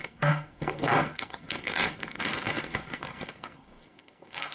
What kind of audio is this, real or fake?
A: fake